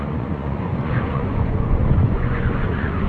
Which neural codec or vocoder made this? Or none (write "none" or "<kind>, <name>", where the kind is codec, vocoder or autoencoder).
vocoder, Vocos